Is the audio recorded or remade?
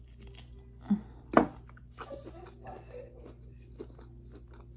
recorded